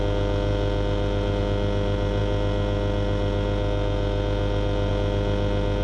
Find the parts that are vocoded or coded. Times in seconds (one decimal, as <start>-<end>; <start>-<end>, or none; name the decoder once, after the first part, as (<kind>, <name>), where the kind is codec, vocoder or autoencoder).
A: none